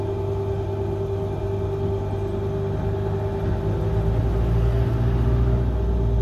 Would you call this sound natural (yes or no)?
yes